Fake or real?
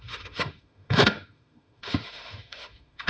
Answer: fake